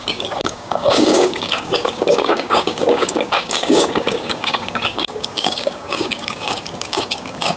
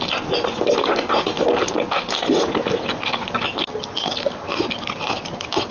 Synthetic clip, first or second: first